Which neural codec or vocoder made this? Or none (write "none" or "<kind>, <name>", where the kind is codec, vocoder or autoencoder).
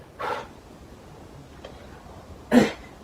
none